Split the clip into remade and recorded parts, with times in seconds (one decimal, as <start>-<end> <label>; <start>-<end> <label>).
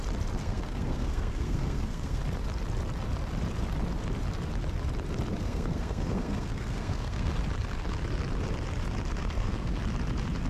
0.0-0.4 recorded; 0.4-2.2 remade; 2.2-5.4 recorded; 5.4-7.3 remade; 7.3-9.2 recorded; 9.2-9.8 remade; 9.8-10.5 recorded